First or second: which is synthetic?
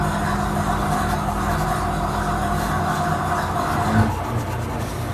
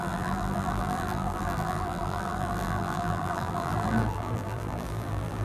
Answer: second